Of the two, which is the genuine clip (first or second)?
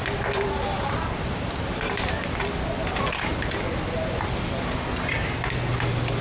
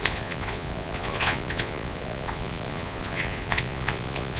first